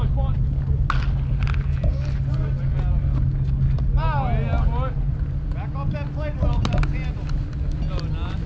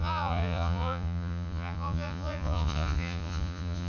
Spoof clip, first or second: second